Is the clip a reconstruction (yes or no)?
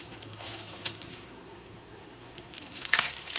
yes